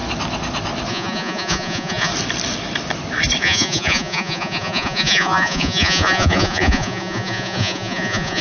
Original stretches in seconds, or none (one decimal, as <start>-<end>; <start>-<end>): 0.0-0.9; 2.1-3.4